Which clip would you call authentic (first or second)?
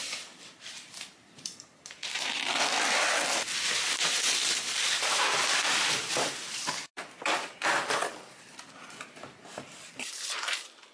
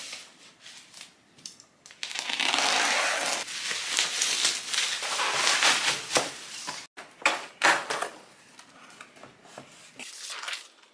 second